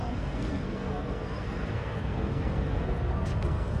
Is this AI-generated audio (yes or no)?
yes